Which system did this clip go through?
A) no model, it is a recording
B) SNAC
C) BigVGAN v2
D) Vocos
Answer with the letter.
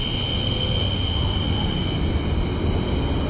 A